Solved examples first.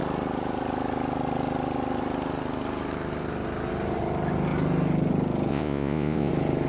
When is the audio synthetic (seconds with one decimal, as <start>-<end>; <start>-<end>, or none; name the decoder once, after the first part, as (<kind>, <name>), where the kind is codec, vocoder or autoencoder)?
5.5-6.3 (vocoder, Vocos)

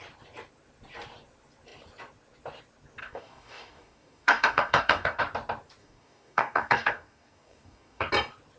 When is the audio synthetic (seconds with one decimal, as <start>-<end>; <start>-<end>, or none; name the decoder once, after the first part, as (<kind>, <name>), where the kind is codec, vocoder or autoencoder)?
3.0-5.2 (codec, DAC); 5.8-8.1

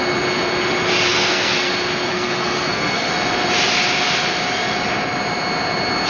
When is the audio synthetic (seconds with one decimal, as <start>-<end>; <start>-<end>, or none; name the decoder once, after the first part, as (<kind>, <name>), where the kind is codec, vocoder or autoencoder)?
1.1-1.7 (codec, SNAC); 2.1-3.1